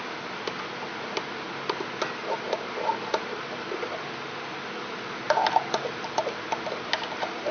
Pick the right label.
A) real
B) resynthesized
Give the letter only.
A